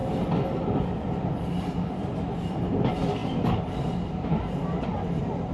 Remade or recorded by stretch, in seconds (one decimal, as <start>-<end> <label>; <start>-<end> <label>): 0.0-2.6 remade; 2.6-5.5 recorded